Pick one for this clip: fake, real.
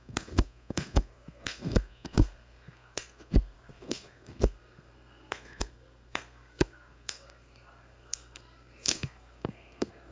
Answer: fake